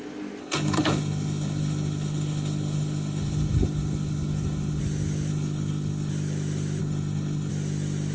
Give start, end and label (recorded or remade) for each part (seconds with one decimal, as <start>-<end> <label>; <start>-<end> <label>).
0.0-0.4 recorded; 0.4-4.8 remade; 4.8-5.3 recorded; 5.3-6.1 remade; 6.1-6.8 recorded; 6.8-7.5 remade; 7.5-8.1 recorded

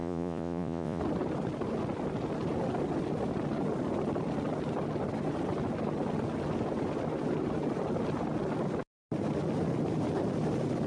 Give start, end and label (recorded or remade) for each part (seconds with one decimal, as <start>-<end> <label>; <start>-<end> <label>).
0.0-1.0 remade; 1.0-10.9 recorded

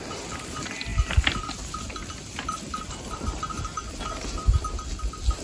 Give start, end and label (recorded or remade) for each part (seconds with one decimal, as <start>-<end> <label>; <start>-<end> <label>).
0.0-5.4 recorded

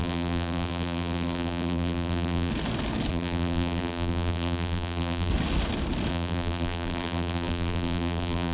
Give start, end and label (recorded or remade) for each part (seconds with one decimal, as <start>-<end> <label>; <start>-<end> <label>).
0.0-2.5 remade; 2.5-3.1 recorded; 3.1-5.3 remade; 5.3-6.1 recorded; 6.1-8.5 remade

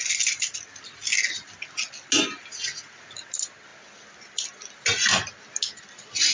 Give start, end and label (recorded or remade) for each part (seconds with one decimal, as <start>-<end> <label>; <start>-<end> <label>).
0.0-6.3 recorded

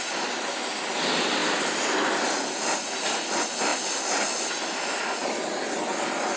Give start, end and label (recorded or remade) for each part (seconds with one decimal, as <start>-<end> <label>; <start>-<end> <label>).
0.0-6.4 recorded